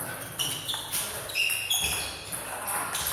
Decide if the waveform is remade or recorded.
recorded